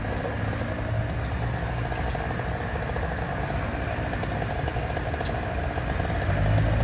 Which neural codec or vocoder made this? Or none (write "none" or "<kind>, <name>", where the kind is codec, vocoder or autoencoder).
none